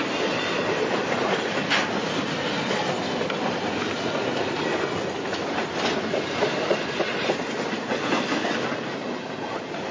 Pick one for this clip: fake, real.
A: real